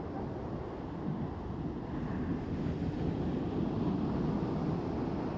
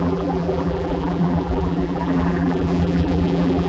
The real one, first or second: first